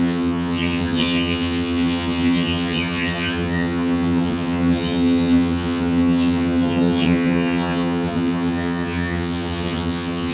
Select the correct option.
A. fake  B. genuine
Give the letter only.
A